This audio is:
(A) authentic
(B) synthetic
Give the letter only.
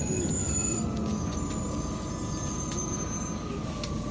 A